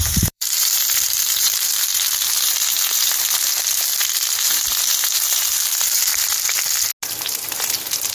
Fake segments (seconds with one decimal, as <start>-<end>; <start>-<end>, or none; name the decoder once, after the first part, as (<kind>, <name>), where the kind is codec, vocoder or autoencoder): 0.0-1.9 (vocoder, BigVGAN v2); 4.4-6.1